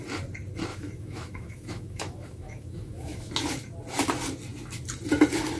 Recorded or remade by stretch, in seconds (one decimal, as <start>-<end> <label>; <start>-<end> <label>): 0.0-0.7 recorded; 0.7-3.3 remade; 3.3-5.6 recorded